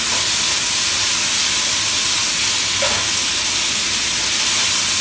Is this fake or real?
real